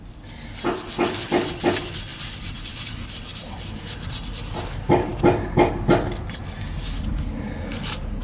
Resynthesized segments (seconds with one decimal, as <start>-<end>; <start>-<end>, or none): 5.1-5.7